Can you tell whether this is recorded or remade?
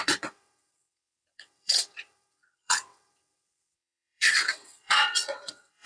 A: remade